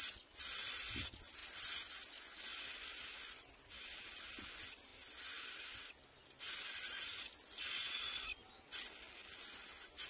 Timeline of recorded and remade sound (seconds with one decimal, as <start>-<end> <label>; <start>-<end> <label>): 0.0-10.1 recorded